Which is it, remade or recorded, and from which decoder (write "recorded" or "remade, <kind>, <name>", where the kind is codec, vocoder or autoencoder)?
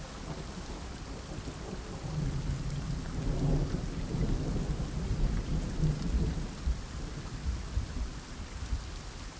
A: recorded